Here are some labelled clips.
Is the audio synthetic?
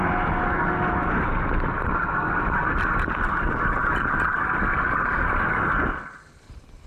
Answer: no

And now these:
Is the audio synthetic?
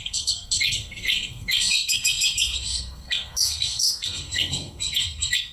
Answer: yes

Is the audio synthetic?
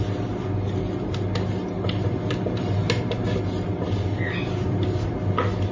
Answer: no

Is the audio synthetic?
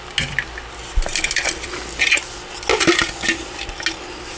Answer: no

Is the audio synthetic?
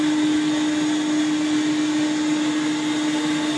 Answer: no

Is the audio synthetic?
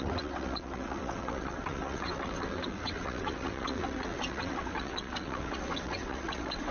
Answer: yes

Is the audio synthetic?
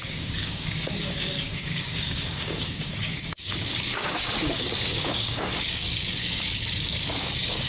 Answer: yes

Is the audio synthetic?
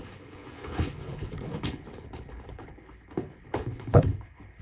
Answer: yes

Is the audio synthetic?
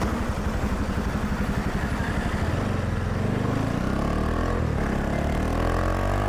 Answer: no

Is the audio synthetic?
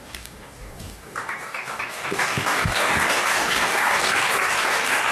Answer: yes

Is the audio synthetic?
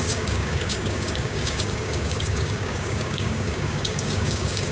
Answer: yes